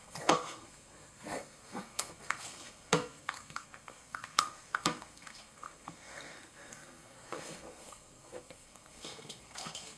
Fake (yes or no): yes